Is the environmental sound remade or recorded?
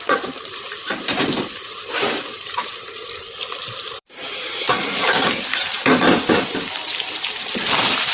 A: remade